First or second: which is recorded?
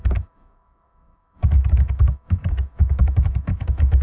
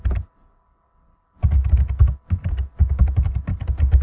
second